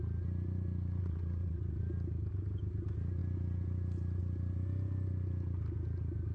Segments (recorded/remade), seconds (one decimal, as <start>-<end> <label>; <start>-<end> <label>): 0.0-1.0 recorded; 1.0-1.8 remade; 1.8-6.3 recorded

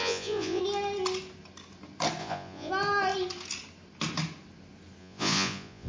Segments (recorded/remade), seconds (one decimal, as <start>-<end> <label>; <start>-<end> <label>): 0.0-0.6 remade; 0.6-2.2 recorded; 2.2-2.7 remade; 2.7-5.0 recorded; 5.0-5.9 remade

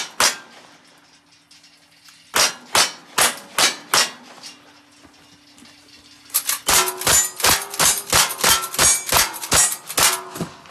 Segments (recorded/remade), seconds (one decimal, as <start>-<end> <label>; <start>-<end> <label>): 0.0-10.7 recorded

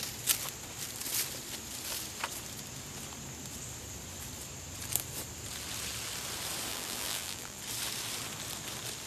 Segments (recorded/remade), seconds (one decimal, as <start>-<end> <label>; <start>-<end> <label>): 0.0-6.7 recorded; 6.7-7.6 remade; 7.6-9.1 recorded

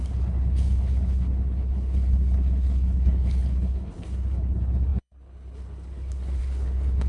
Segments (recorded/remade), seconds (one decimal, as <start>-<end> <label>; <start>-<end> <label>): 0.0-7.1 remade